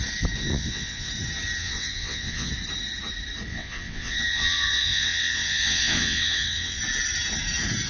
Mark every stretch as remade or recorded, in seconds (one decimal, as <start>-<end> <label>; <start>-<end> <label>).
0.0-0.5 recorded; 0.5-1.1 remade; 1.1-1.6 recorded; 1.6-2.5 remade; 2.5-3.5 recorded; 3.5-6.8 remade; 6.8-7.9 recorded